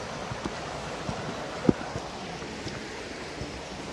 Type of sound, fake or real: real